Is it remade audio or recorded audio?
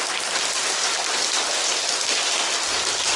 recorded